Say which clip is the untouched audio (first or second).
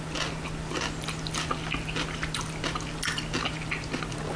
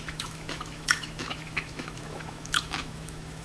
first